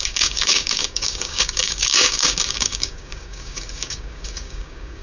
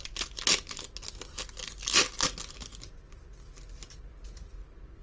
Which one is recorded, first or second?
second